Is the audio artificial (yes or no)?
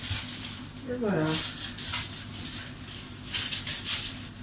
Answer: no